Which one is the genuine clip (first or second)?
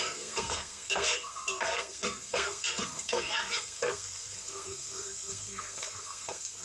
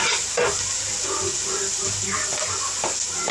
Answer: second